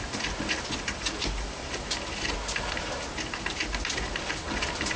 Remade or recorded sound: recorded